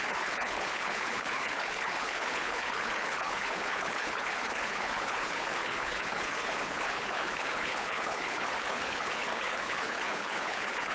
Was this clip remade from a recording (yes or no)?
yes